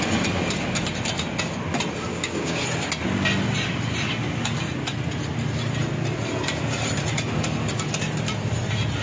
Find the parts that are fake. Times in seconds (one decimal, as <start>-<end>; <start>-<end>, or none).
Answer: 2.1-2.6